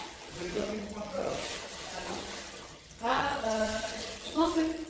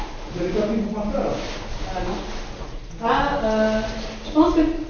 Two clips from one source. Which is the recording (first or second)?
second